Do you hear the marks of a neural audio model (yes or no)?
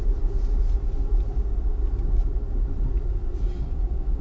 no